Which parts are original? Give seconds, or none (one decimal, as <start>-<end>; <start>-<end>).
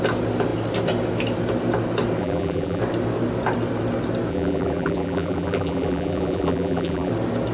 0.0-2.2; 2.8-4.3; 7.1-7.5